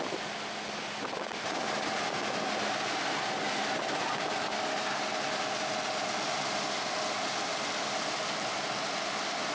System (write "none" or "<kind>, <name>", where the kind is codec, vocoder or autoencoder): none